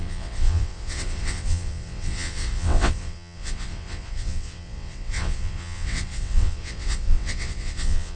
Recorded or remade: remade